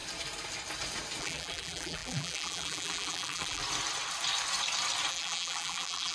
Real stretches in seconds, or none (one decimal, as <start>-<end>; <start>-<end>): 0.0-1.2; 3.6-5.1